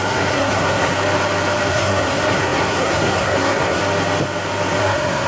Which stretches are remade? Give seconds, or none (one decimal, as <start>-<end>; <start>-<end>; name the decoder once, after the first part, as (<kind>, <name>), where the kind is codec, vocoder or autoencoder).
0.0-0.9 (codec, SNAC); 1.7-3.8; 4.8-5.3